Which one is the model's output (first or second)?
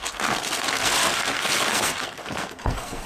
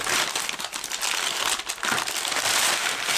first